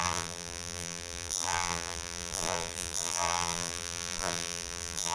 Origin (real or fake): fake